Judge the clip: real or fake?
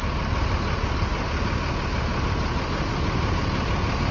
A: real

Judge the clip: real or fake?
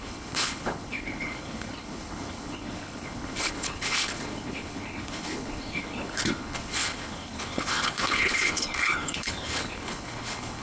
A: fake